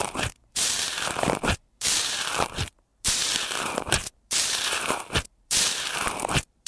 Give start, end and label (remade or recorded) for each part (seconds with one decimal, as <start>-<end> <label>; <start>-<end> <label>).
0.0-6.7 remade